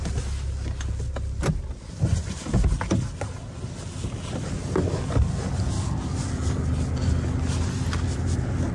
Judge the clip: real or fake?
real